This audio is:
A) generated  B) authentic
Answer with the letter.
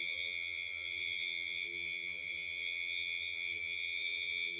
A